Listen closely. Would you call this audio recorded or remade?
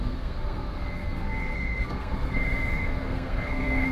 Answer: remade